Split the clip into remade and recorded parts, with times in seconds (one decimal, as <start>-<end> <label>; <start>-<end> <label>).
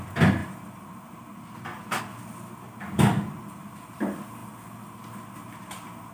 0.0-6.1 recorded